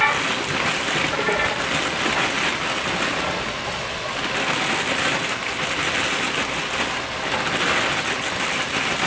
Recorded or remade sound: recorded